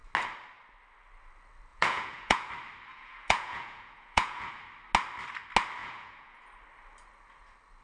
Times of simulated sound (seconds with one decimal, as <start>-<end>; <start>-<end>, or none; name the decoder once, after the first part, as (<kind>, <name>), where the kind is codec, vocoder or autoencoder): 1.7-2.5 (vocoder, Vocos); 2.9-4.5; 5.8-6.4